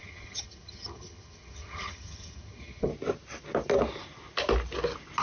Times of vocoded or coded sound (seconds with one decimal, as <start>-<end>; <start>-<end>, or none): 0.0-2.9